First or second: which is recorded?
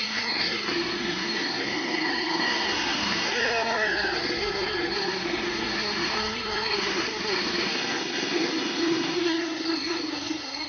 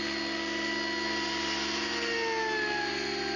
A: second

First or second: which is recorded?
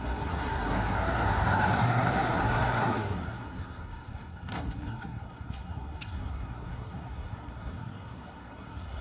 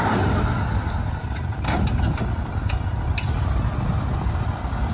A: second